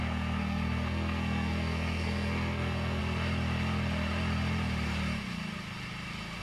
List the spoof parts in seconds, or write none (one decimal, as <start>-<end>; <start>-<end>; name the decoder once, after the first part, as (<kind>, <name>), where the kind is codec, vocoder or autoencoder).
0.0-3.0 (codec, SNAC)